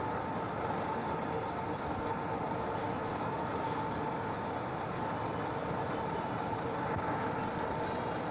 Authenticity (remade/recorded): recorded